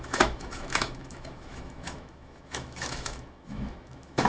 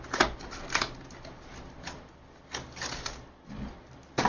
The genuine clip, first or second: second